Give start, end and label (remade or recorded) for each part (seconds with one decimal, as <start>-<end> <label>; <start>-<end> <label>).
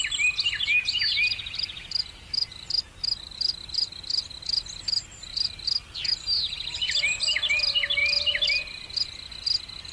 0.0-9.9 recorded